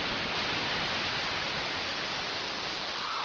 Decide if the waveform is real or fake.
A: real